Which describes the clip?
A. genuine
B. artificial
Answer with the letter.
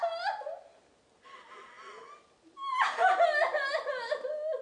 A